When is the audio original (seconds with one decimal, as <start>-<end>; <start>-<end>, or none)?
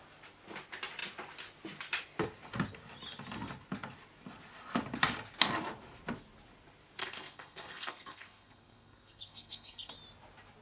0.0-7.0; 9.9-10.6